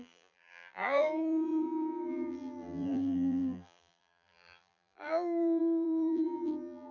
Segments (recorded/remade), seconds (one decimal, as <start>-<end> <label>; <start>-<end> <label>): 0.0-6.9 remade